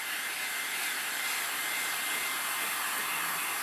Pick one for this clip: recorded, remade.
recorded